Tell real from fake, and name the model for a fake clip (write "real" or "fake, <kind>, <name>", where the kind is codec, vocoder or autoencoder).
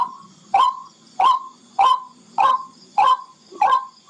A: fake, vocoder, Vocos